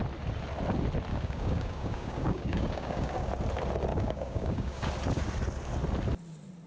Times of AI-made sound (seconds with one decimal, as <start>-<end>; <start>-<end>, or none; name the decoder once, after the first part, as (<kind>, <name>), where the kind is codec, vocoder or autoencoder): 1.1-3.3 (codec, DAC); 3.9-4.9